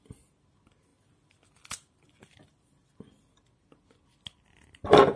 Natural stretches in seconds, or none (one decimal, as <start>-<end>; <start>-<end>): 0.0-5.2